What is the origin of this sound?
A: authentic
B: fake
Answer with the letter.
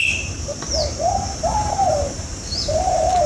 B